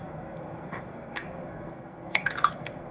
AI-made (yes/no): yes